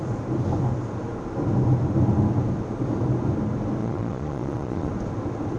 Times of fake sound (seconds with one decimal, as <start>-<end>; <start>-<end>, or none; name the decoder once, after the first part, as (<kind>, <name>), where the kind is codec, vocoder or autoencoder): 3.8-4.9 (vocoder, Vocos)